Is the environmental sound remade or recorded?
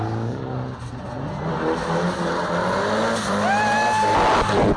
recorded